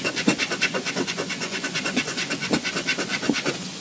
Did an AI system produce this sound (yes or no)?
yes